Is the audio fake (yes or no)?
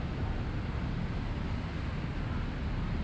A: no